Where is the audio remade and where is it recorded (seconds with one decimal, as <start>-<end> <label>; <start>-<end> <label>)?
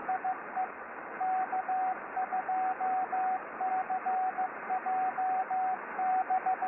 0.0-6.7 recorded